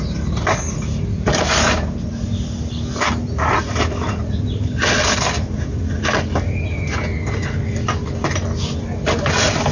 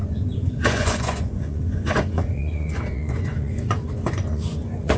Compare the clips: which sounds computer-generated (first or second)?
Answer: second